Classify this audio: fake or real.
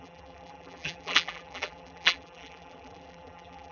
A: fake